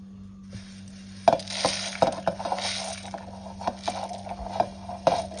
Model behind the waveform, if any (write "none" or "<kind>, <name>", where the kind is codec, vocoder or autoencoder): none